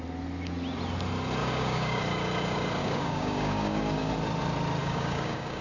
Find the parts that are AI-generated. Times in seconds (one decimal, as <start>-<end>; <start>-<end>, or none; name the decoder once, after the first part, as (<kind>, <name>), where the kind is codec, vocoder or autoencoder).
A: 1.4-2.0 (codec, DAC); 2.8-4.1; 4.8-5.6